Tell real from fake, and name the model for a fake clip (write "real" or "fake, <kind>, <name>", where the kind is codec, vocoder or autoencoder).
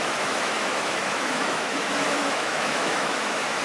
fake, autoencoder, DAC-VAE